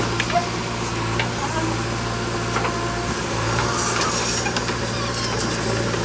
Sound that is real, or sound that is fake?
real